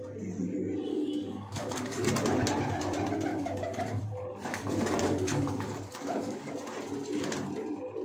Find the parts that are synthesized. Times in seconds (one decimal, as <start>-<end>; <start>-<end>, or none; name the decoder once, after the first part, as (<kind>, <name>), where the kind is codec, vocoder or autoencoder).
0.9-2.1 (codec, DAC); 3.3-4.0; 4.5-6.5